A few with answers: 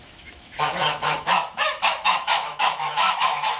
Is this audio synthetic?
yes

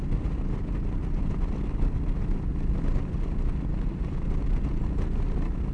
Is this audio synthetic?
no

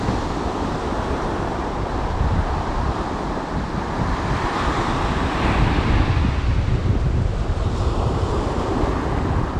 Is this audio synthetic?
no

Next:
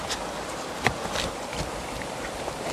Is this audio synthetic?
no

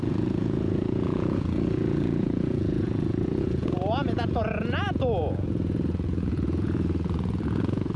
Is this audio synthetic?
yes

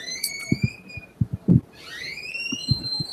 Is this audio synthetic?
yes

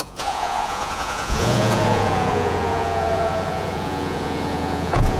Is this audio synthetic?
yes